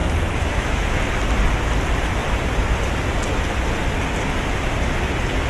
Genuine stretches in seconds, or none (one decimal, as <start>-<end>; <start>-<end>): 1.0-5.5